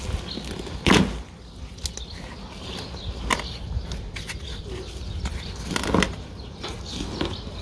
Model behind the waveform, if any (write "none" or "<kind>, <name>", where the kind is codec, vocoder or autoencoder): none